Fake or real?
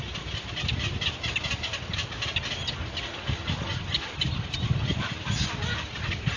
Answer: real